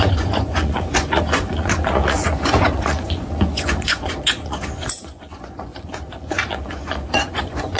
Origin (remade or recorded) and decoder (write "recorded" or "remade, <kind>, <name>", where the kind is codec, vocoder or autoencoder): remade, vocoder, Vocos